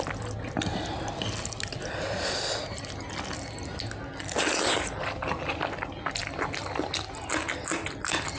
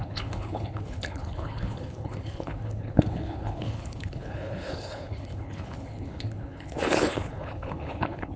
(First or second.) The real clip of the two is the first